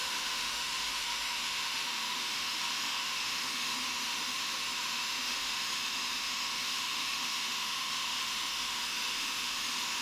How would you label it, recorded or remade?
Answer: remade